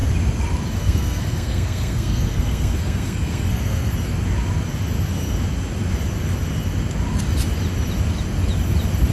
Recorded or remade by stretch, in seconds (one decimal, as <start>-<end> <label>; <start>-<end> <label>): 0.0-0.8 recorded; 0.8-3.9 remade; 3.9-9.1 recorded